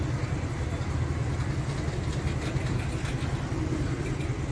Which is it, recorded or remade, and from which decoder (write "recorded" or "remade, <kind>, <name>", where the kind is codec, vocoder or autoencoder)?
recorded